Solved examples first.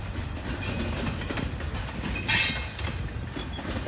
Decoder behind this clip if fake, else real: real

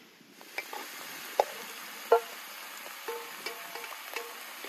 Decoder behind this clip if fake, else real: real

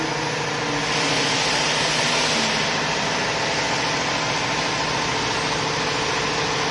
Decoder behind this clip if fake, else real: real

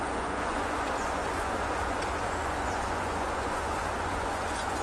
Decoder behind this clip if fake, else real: fake, vocoder, Vocos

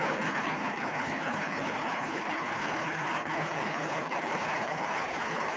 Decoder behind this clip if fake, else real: fake, codec, HILCodec